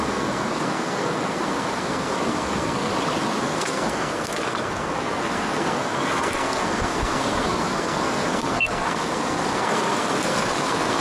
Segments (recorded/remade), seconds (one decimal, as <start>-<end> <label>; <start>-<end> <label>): 0.0-2.9 remade; 2.9-3.4 recorded; 3.4-11.0 remade